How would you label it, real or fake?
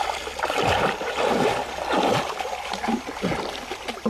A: real